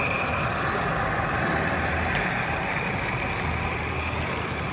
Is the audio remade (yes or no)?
no